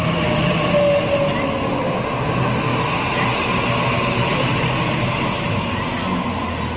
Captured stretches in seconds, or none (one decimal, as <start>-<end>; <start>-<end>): 0.0-6.8